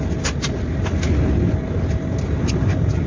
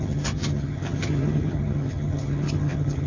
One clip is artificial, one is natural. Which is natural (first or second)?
first